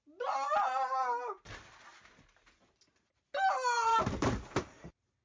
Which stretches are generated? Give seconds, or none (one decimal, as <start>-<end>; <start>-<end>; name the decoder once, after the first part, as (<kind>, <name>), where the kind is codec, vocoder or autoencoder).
none

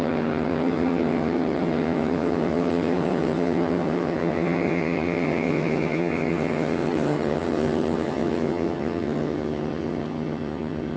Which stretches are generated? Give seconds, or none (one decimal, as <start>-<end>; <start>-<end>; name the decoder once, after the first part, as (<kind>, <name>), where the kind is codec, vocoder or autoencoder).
0.0-11.0 (vocoder, HiFi-GAN)

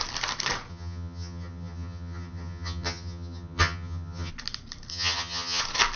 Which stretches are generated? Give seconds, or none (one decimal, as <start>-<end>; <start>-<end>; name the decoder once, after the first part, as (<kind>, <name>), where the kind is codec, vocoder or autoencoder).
0.7-4.3 (vocoder, HiFi-GAN); 4.9-5.6

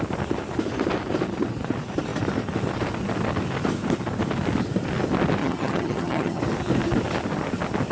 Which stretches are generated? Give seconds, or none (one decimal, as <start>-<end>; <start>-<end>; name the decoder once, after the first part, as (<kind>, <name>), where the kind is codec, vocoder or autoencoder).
5.4-6.4 (vocoder, HiFi-GAN)